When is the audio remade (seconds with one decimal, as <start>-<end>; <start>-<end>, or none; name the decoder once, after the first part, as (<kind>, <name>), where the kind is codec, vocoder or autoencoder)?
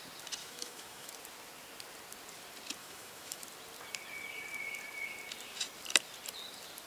0.4-1.1 (autoencoder, DAC-VAE); 2.8-3.4